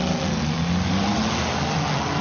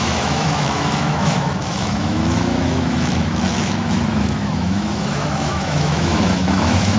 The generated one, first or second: second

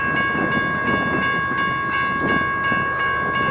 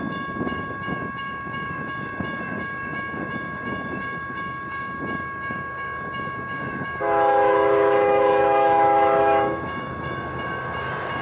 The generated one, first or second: second